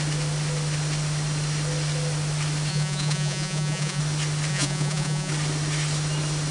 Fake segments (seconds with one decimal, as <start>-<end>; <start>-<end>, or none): 2.7-4.0; 4.5-5.3